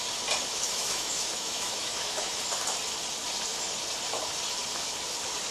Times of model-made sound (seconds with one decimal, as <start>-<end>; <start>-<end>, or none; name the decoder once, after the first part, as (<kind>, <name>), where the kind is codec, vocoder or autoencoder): 0.5-2.4 (autoencoder, DAC-VAE)